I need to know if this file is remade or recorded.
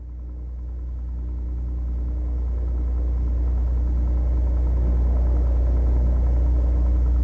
recorded